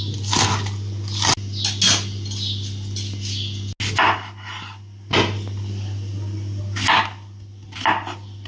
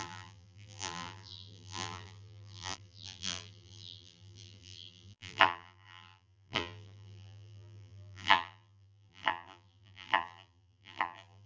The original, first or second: first